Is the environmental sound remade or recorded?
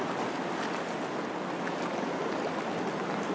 recorded